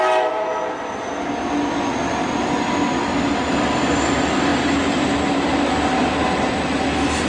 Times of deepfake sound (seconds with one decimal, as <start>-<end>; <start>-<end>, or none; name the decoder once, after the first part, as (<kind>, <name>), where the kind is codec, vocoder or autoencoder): none

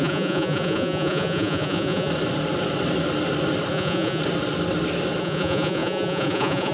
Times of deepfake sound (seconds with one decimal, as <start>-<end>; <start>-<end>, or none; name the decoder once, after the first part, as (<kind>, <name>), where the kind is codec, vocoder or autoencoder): 0.0-2.1 (vocoder, Vocos); 3.7-4.2; 5.2-6.7

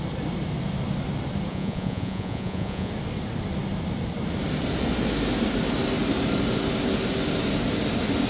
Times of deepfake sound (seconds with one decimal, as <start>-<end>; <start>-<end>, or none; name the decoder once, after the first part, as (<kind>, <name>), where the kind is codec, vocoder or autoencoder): 1.5-2.9 (vocoder, Vocos)

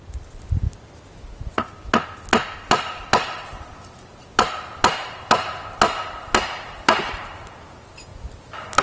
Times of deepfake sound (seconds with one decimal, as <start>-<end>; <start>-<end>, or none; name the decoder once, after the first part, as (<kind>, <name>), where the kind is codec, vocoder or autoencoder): none

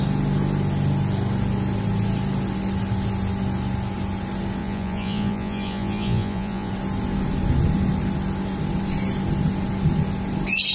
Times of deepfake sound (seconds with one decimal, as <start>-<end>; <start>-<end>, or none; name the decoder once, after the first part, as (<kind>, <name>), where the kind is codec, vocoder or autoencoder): 4.6-6.7 (vocoder, Vocos)